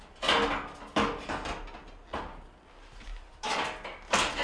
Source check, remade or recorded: recorded